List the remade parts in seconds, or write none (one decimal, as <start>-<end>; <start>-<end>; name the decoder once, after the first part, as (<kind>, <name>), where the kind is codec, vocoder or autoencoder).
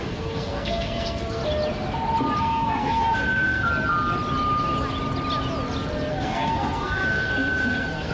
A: 0.0-1.4 (codec, SNAC); 2.4-3.7; 6.1-8.1